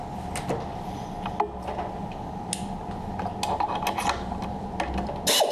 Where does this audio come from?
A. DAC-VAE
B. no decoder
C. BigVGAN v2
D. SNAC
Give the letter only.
B